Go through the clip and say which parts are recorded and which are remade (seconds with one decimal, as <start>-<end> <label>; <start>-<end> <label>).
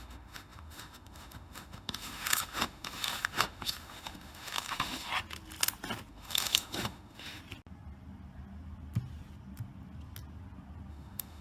0.0-5.1 remade; 5.1-6.1 recorded; 6.1-7.4 remade; 7.4-10.9 recorded; 10.9-11.4 remade